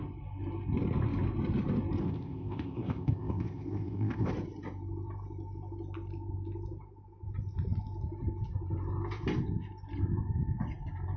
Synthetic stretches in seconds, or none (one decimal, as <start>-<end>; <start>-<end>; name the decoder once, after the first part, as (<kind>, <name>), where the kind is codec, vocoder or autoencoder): 2.0-4.3 (codec, ZipCodec)